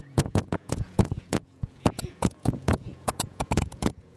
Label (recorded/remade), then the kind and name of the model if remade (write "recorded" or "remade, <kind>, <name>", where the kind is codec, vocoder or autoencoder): remade, vocoder, Vocos